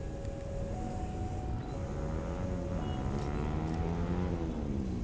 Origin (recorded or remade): recorded